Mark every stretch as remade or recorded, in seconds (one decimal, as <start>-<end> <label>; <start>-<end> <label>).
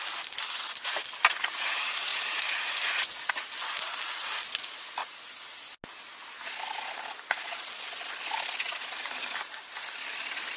0.0-2.1 recorded; 2.1-3.3 remade; 3.3-5.0 recorded; 5.0-5.7 remade; 5.7-10.6 recorded